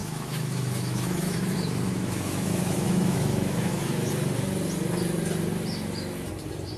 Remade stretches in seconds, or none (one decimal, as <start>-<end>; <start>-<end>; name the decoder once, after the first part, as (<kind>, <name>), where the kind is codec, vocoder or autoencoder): 0.0-4.1 (autoencoder, DAC-VAE)